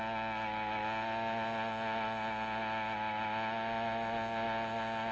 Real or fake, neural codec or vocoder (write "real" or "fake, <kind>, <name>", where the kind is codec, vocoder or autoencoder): real